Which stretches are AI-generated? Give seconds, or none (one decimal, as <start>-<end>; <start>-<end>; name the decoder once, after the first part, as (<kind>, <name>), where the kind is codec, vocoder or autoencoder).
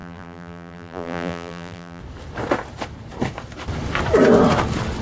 0.0-2.0 (vocoder, BigVGAN v2)